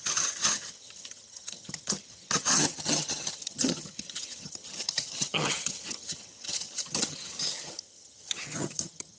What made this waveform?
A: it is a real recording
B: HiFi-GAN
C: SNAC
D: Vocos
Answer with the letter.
B